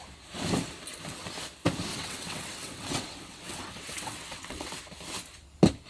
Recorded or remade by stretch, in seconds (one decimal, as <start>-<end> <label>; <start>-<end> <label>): 0.0-1.9 recorded; 1.9-4.8 remade; 4.8-5.9 recorded